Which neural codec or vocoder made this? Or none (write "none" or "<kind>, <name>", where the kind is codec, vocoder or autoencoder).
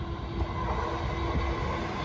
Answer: none